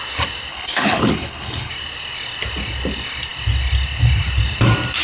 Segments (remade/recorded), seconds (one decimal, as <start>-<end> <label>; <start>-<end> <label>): 0.0-0.5 recorded; 0.5-1.7 remade; 1.7-5.0 recorded